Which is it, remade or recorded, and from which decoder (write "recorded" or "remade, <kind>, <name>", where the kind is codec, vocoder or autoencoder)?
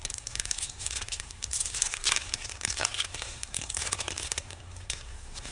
remade, codec, SNAC